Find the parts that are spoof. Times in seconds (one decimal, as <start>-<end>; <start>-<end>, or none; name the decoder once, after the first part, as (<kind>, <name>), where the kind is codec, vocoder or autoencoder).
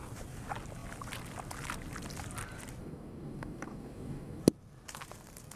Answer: 2.8-4.4 (codec, DAC)